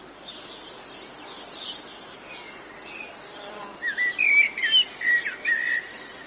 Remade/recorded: recorded